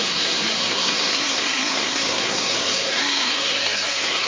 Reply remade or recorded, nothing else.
remade